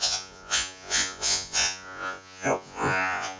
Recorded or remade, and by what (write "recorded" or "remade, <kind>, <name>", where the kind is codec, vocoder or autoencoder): remade, vocoder, Vocos